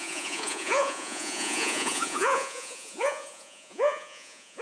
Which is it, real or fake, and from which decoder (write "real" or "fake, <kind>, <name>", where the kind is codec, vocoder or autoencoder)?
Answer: fake, vocoder, Vocos